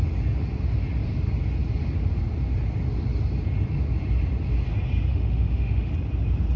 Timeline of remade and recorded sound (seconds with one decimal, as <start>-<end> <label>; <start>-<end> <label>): 0.0-5.1 recorded; 5.1-5.9 remade; 5.9-6.6 recorded